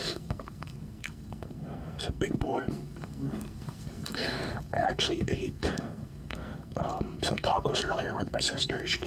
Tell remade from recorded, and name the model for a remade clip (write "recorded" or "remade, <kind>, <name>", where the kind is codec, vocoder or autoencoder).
remade, codec, SNAC